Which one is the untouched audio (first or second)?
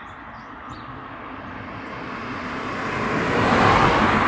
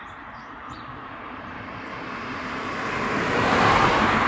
first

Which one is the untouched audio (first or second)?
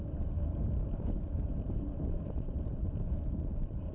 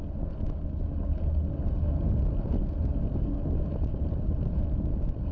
second